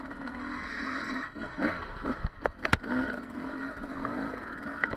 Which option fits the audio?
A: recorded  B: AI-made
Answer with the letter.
B